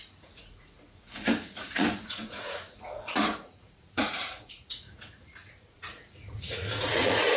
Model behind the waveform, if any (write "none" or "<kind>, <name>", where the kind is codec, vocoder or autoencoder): vocoder, Vocos